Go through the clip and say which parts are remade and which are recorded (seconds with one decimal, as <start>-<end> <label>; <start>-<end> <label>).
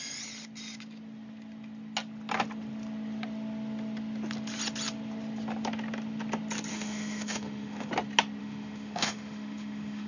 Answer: 0.0-6.7 recorded; 6.7-7.9 remade; 7.9-8.4 recorded; 8.4-10.1 remade